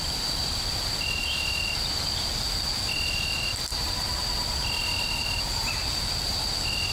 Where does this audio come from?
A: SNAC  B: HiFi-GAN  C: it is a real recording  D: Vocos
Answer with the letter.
C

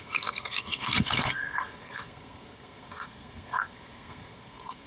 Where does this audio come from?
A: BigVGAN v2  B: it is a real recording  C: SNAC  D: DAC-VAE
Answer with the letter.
C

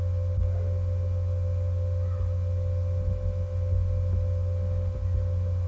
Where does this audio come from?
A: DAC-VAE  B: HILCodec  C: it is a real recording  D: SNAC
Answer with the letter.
C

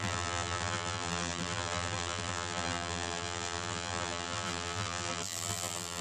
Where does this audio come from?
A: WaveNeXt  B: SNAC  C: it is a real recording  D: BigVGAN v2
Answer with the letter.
D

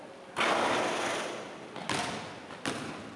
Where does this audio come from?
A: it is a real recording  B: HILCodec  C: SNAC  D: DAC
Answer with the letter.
A